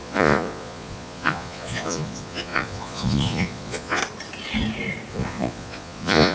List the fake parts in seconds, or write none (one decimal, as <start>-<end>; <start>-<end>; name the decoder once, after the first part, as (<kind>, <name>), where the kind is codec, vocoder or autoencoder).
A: 0.0-4.0 (vocoder, Vocos); 5.1-6.3